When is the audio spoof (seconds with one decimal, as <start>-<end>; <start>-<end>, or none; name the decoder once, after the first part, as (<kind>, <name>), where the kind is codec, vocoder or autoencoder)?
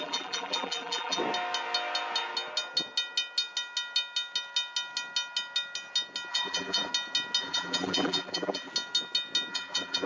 0.0-1.2 (vocoder, BigVGAN v2); 6.3-6.9; 7.4-8.7; 9.5-10.1